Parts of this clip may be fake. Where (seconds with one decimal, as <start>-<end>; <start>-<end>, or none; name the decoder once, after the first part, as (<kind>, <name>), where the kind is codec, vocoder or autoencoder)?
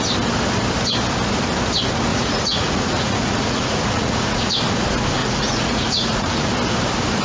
2.1-4.5 (vocoder, Vocos); 5.2-6.5